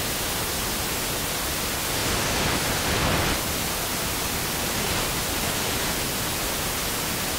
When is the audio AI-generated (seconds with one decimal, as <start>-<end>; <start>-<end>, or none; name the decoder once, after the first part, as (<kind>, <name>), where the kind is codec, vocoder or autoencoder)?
none